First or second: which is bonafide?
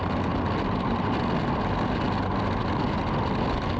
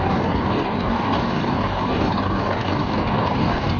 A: first